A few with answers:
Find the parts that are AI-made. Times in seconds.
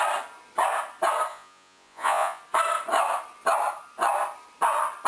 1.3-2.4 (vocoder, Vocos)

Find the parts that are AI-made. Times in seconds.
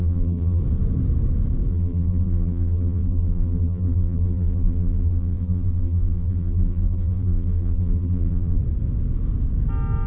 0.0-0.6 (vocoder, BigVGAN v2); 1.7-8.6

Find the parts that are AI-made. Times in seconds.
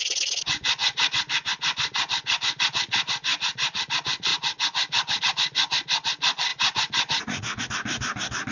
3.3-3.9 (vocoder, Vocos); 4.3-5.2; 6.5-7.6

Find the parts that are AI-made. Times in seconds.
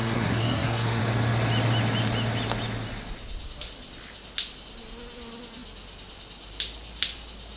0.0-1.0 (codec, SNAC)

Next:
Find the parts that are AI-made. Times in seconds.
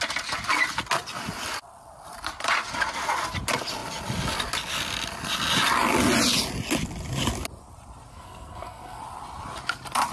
8.1-9.0 (codec, SNAC)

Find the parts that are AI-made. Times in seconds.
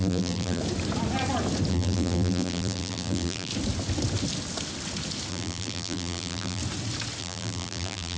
0.0-0.6 (vocoder, BigVGAN v2); 1.7-3.5; 5.3-6.6; 7.2-8.2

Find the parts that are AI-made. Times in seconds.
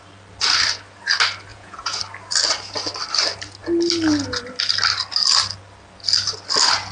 1.5-2.0 (vocoder, Vocos)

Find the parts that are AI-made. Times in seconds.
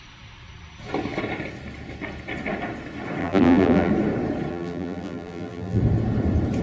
3.2-3.9 (vocoder, BigVGAN v2); 4.5-5.8